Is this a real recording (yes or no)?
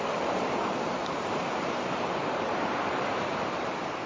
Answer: no